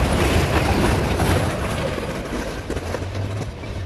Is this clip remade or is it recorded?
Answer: recorded